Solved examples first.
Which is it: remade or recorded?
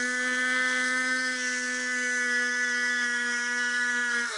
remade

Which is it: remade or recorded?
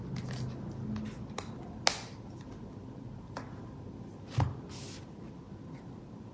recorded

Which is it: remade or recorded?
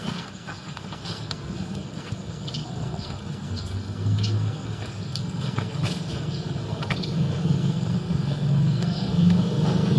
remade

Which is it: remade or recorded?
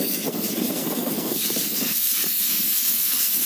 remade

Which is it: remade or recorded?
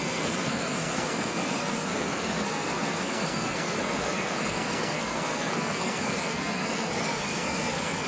remade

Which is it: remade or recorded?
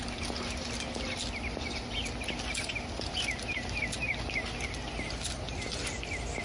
recorded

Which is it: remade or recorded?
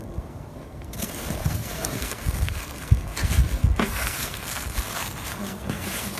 remade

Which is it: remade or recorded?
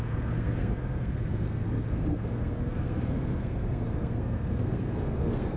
remade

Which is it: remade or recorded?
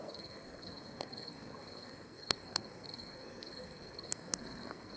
remade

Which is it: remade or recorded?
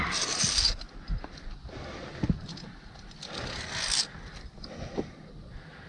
recorded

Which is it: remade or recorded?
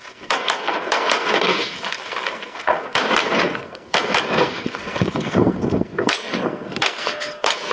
remade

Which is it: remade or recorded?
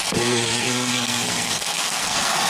remade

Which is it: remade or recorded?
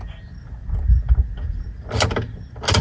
recorded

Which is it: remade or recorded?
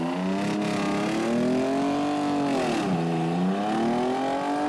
recorded